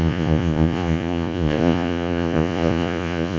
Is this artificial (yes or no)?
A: yes